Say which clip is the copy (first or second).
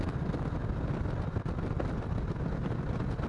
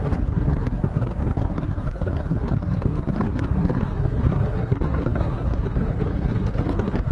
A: second